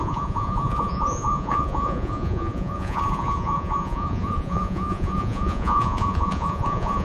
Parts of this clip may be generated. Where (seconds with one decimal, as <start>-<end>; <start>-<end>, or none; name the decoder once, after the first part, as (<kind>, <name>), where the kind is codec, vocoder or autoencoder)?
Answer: 0.0-7.0 (vocoder, Vocos)